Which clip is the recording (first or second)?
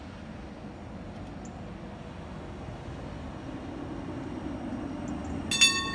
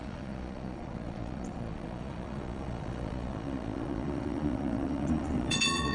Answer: first